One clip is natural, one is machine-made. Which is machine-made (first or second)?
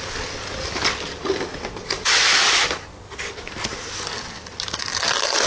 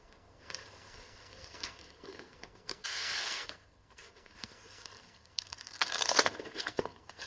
second